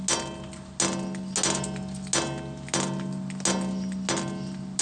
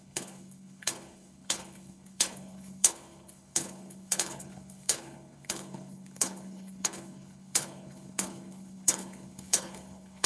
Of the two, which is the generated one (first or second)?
second